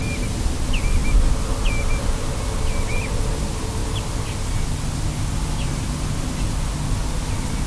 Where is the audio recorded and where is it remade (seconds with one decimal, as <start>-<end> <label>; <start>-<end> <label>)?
0.0-7.7 recorded